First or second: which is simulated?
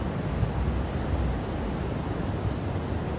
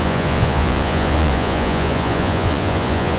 second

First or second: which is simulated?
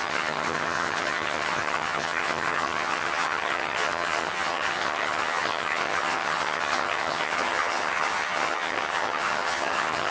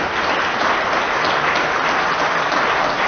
first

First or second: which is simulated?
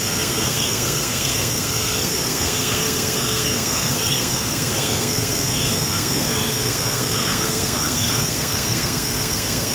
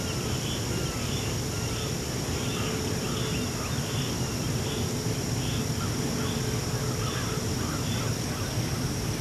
first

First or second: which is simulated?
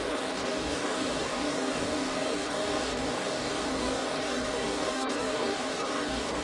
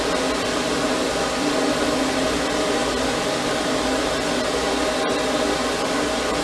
first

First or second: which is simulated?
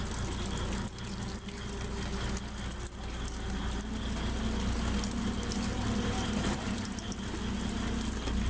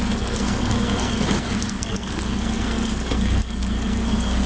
second